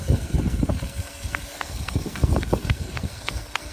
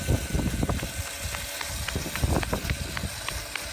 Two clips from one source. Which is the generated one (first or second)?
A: first